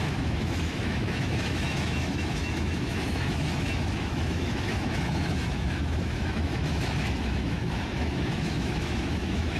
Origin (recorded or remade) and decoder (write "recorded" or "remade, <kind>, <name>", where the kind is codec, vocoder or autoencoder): remade, autoencoder, DAC-VAE